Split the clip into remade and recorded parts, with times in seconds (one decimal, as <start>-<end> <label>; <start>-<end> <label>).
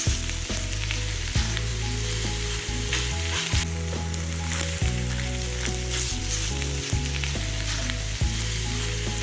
0.0-9.2 recorded